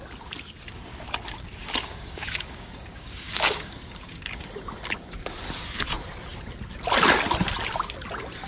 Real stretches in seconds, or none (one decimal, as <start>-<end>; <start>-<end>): 0.0-1.6; 4.5-8.5